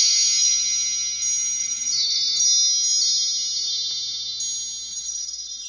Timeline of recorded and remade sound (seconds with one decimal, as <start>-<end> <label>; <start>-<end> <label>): 0.0-1.6 recorded; 1.6-2.4 remade; 2.4-4.9 recorded; 4.9-5.7 remade